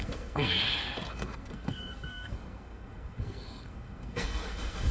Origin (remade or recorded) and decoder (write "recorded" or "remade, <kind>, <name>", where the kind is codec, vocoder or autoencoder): remade, codec, SNAC